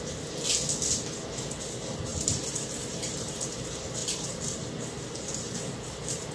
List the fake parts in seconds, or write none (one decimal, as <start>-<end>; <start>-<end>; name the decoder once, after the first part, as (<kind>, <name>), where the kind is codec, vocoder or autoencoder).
2.1-3.4 (vocoder, BigVGAN v2); 4.0-6.3